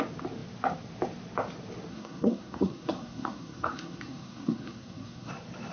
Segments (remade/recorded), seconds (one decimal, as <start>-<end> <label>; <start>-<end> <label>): 0.0-1.9 recorded; 1.9-5.3 remade; 5.3-5.7 recorded